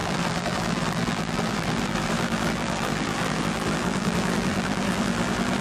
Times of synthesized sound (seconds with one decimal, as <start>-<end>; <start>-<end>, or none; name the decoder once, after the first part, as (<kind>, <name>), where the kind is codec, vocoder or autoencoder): 0.0-5.6 (vocoder, BigVGAN v2)